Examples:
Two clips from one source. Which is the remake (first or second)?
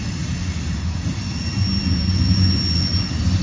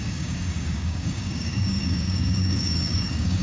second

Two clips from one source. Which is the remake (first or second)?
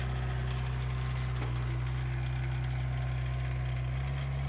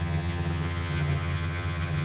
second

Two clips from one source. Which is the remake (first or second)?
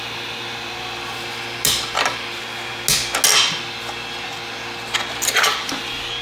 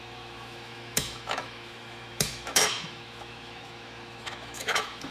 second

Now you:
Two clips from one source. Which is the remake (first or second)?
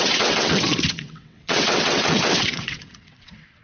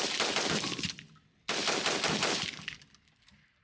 first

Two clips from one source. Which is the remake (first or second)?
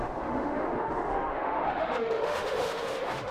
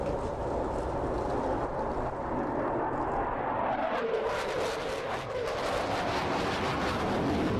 first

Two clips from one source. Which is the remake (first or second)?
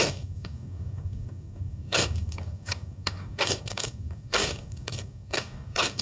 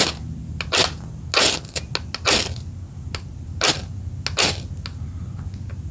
first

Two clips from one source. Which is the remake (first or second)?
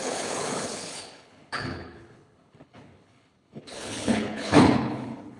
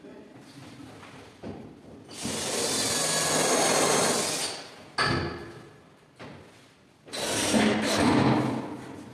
first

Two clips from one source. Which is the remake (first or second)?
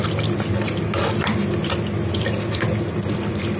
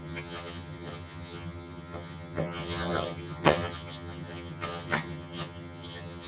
second